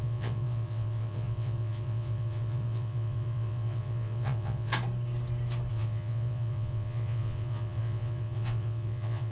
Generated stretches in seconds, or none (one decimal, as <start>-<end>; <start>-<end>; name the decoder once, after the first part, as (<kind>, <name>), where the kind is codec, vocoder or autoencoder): 0.0-4.7 (vocoder, WaveNeXt); 5.7-9.3